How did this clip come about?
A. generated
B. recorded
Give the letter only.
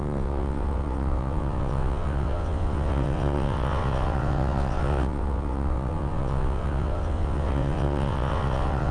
A